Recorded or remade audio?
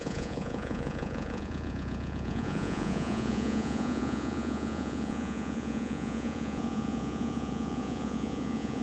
remade